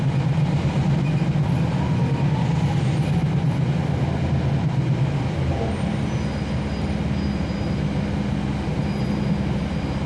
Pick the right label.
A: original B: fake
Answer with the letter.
A